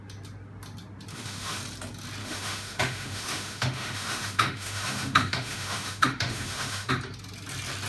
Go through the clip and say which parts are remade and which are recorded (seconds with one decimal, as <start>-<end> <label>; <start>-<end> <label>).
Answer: 0.0-1.1 recorded; 1.1-1.6 remade; 1.6-2.2 recorded; 2.2-6.9 remade; 6.9-7.9 recorded